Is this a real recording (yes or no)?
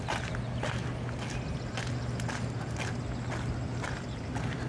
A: yes